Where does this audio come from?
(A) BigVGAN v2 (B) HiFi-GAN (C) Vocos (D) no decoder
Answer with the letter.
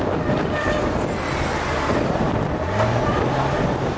D